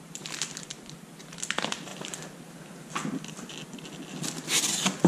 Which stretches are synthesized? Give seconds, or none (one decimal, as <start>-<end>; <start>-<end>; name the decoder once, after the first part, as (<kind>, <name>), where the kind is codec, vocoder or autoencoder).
none